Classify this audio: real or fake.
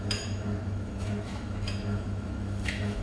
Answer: fake